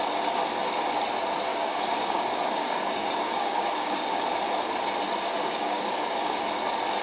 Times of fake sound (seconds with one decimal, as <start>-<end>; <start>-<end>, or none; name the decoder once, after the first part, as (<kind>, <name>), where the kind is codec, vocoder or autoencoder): 1.5-4.1 (codec, DAC); 5.4-6.4